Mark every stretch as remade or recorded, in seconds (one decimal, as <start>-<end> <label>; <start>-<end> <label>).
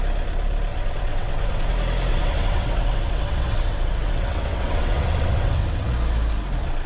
0.0-0.7 recorded; 0.7-1.7 remade; 1.7-2.1 recorded; 2.1-5.9 remade; 5.9-6.9 recorded